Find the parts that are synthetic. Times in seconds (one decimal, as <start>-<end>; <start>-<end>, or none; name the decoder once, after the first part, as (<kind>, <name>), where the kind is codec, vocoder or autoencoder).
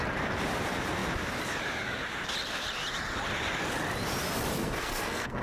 4.6-5.4 (codec, SNAC)